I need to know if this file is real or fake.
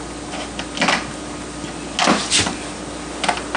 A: real